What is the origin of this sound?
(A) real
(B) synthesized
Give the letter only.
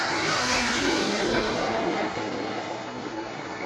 B